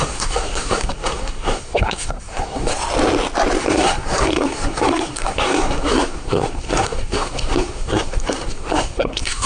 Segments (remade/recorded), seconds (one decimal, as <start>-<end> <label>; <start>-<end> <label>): 0.0-2.7 remade; 2.7-3.6 recorded; 3.6-9.5 remade